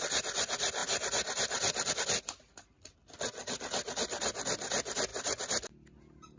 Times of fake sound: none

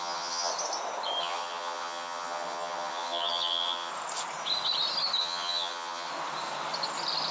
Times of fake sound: 0.0-0.5 (vocoder, HiFi-GAN); 1.2-3.9; 5.2-6.1

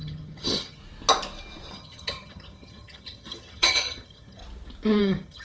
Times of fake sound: 0.0-0.8 (vocoder, HiFi-GAN); 1.7-4.4; 5.0-5.4

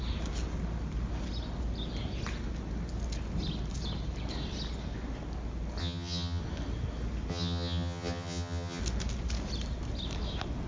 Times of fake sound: 5.8-6.4 (vocoder, HiFi-GAN); 7.3-8.8